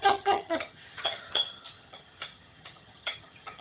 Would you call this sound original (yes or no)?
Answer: no